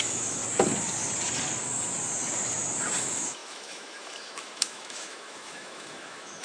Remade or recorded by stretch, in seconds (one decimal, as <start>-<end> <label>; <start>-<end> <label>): 0.0-0.4 remade; 0.4-3.0 recorded; 3.0-6.4 remade